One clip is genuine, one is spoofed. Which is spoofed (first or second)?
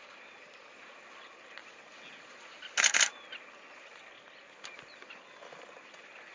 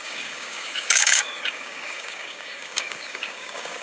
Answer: second